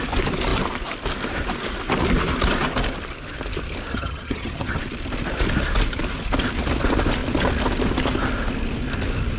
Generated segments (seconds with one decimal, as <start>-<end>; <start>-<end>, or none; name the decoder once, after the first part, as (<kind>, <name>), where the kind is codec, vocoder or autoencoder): 3.9-4.8 (vocoder, HiFi-GAN)